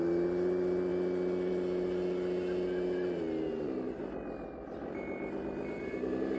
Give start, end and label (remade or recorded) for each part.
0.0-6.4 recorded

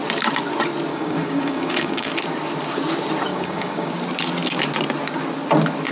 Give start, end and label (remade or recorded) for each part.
0.0-0.9 recorded; 0.9-2.1 remade; 2.1-3.3 recorded; 3.3-3.9 remade; 3.9-5.9 recorded

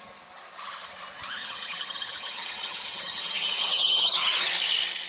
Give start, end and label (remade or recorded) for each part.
0.0-1.4 recorded; 1.4-4.5 remade; 4.5-5.1 recorded

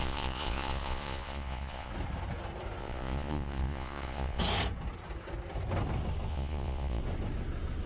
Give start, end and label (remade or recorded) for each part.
0.0-1.9 remade; 1.9-2.8 recorded; 2.8-4.4 remade; 4.4-6.3 recorded; 6.3-7.0 remade; 7.0-7.9 recorded